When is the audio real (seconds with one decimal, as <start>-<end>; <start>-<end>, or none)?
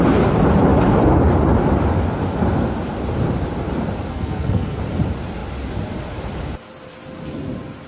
0.0-4.1; 4.8-7.9